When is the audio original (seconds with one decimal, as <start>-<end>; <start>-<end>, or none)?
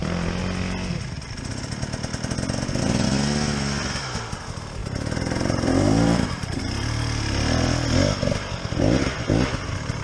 0.0-4.8; 6.6-10.0